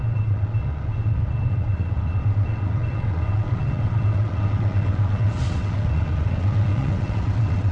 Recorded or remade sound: remade